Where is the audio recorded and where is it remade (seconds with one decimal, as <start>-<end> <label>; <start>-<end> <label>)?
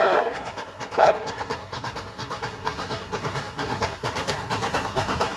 0.0-5.4 remade